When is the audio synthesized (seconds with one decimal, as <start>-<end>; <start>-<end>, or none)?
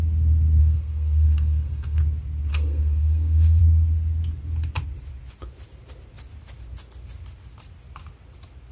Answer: 0.6-2.0; 2.5-3.6